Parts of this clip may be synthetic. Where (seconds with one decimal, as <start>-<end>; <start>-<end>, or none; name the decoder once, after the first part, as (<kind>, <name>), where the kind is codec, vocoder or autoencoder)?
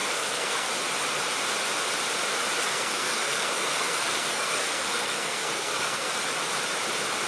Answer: 0.0-0.7 (codec, SNAC); 2.6-6.1